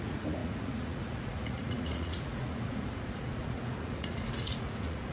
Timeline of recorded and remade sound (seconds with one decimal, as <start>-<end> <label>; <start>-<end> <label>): 0.0-5.1 remade